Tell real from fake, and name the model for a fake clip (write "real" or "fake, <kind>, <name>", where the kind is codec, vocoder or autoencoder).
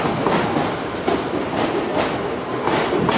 real